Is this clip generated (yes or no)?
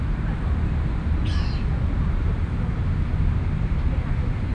no